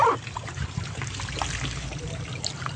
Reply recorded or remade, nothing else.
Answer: recorded